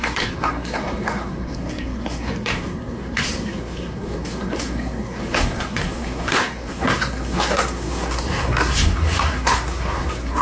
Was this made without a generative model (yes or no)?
no